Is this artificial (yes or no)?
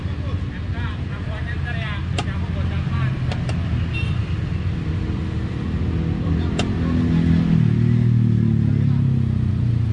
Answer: no